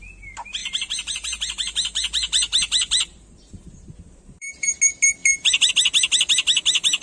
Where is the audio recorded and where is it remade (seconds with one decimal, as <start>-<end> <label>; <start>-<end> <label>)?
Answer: 0.0-0.6 recorded; 0.6-4.8 remade; 4.8-5.2 recorded; 5.2-5.7 remade; 5.7-7.0 recorded